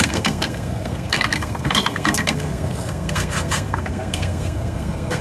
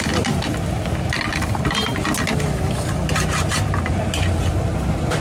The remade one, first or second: first